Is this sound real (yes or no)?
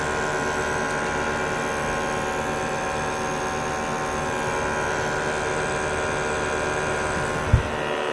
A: yes